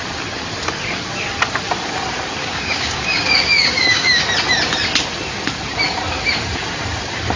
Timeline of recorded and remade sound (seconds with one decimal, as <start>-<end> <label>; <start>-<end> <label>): 0.0-2.4 recorded; 2.4-4.2 remade; 4.2-7.4 recorded